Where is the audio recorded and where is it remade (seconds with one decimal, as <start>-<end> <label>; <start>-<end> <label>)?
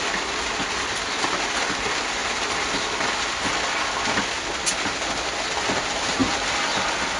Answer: 0.0-7.2 recorded